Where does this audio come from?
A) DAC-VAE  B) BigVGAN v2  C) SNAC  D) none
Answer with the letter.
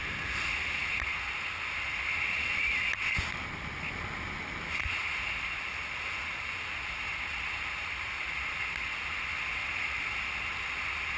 D